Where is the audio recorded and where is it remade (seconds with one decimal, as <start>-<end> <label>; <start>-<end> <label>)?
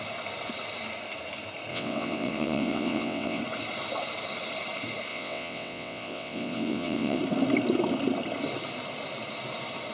0.0-1.7 recorded; 1.7-3.4 remade; 3.4-5.1 recorded; 5.1-7.2 remade; 7.2-9.9 recorded